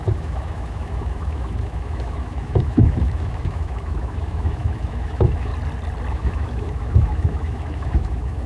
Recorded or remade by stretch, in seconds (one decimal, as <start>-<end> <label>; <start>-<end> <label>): 0.0-5.5 remade; 5.5-6.1 recorded; 6.1-8.5 remade